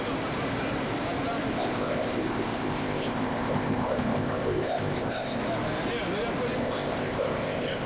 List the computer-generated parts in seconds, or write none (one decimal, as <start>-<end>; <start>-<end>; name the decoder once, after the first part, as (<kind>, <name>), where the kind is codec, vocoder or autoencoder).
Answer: 1.5-5.4 (codec, ZipCodec); 6.6-7.9